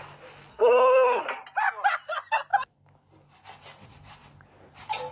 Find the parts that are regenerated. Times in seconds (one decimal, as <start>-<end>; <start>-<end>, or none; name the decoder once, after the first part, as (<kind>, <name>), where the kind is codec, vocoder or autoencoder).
0.5-1.2 (codec, SNAC)